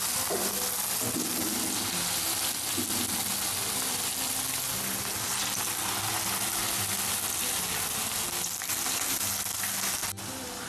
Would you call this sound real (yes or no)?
yes